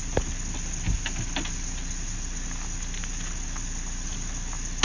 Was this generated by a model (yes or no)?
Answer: no